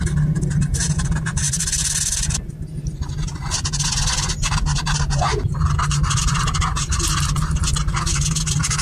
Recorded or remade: recorded